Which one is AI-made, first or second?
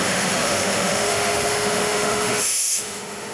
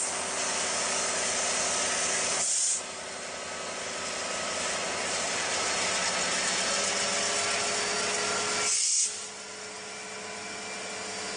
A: first